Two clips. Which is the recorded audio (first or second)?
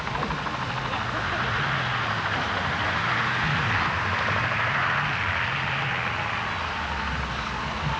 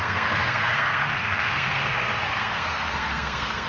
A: first